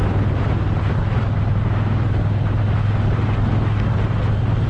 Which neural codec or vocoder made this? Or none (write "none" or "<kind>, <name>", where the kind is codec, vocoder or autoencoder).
none